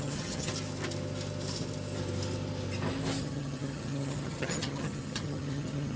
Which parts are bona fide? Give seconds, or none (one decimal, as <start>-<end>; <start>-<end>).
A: 0.5-3.2